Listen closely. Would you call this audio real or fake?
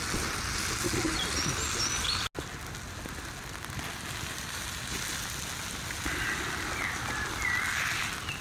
real